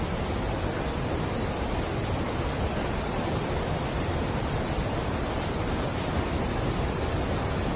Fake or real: real